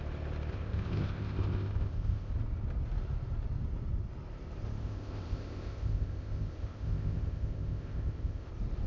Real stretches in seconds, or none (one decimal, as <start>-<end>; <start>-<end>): 0.0-0.5; 2.3-4.8; 8.5-8.9